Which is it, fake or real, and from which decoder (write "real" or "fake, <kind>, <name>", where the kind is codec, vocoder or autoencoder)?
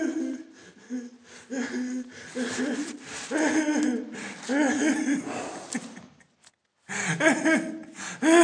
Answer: real